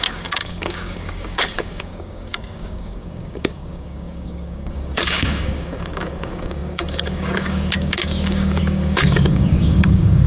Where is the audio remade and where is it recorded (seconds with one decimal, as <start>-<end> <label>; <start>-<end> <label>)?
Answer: 0.0-10.3 remade